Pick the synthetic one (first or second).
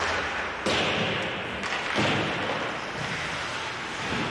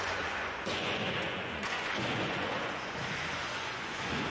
second